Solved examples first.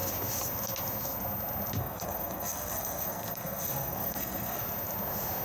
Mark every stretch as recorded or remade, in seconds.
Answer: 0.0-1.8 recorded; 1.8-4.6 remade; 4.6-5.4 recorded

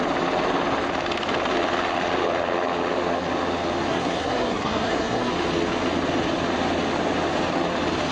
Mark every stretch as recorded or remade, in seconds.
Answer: 0.0-3.9 recorded; 3.9-5.3 remade; 5.3-8.1 recorded

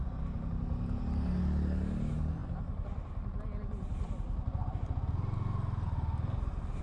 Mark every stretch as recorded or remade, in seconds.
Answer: 0.0-6.8 recorded

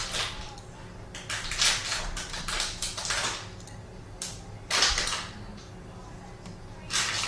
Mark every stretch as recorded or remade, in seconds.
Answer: 0.0-7.3 recorded

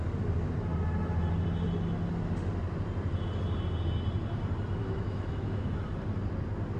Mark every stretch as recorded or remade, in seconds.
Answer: 0.0-4.8 recorded; 4.8-5.7 remade; 5.7-6.8 recorded

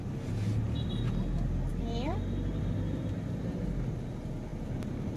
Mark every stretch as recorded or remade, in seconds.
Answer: 0.0-5.2 recorded

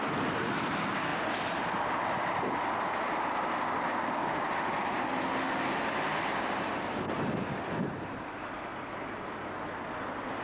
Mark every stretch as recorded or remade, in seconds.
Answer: 0.0-10.4 recorded

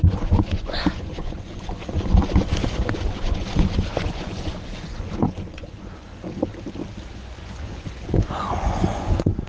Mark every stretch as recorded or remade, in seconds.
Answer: 0.0-6.5 remade; 6.5-7.1 recorded; 7.1-9.5 remade